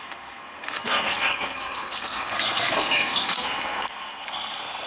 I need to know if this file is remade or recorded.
remade